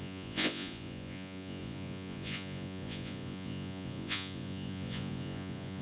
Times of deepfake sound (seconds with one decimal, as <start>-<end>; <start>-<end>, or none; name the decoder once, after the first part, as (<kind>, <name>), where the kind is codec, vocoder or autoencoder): 0.0-5.8 (vocoder, Vocos)

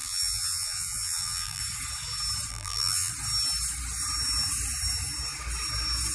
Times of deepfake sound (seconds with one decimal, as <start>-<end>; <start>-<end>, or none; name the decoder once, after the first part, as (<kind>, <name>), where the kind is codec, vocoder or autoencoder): 0.0-1.6 (vocoder, BigVGAN v2); 2.5-3.1

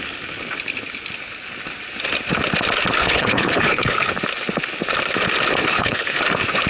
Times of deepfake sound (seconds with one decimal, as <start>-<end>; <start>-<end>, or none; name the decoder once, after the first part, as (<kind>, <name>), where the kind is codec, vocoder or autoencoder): 3.0-4.1 (codec, HILCodec); 5.7-6.2

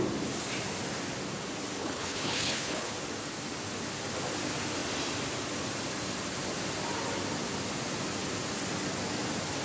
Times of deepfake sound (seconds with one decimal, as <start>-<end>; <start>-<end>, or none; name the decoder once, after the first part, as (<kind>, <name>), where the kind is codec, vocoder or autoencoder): 1.8-2.9 (codec, HILCodec)

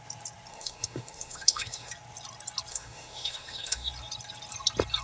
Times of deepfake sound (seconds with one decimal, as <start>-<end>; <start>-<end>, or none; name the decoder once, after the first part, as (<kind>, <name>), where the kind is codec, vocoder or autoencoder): 0.5-1.9 (autoencoder, DAC-VAE); 2.7-3.9

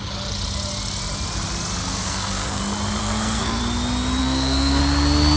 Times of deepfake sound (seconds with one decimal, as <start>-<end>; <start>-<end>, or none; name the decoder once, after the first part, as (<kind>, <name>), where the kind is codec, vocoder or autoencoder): 1.8-2.6 (codec, SNAC); 3.0-3.6; 4.2-4.8

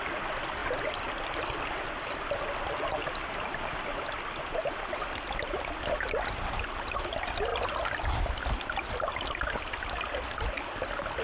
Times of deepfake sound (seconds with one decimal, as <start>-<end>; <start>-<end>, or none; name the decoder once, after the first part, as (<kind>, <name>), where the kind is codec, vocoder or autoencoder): none

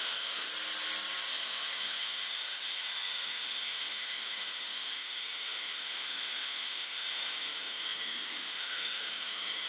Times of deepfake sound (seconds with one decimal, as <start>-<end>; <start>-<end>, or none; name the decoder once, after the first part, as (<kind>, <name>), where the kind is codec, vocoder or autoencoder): 0.0-0.5 (autoencoder, DAC-VAE); 1.3-9.7